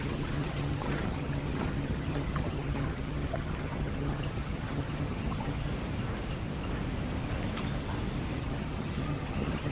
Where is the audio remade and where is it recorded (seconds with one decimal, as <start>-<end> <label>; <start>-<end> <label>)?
0.0-5.7 remade; 5.7-8.4 recorded; 8.4-9.7 remade